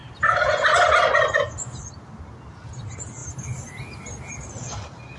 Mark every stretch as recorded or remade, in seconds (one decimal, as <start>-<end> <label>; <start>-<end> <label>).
0.0-5.2 recorded